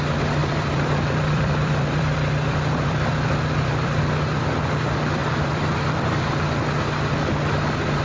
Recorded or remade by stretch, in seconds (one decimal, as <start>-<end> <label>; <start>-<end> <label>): 0.0-0.4 recorded; 0.4-4.0 remade; 4.0-5.2 recorded; 5.2-6.5 remade; 6.5-8.0 recorded